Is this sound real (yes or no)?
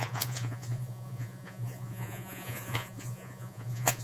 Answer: no